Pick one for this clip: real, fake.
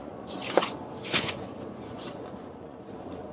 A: fake